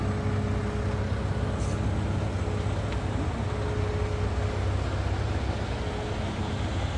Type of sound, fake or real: real